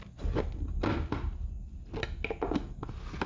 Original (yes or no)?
yes